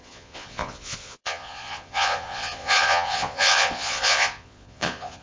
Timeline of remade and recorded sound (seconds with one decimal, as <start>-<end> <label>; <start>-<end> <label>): 0.0-5.2 remade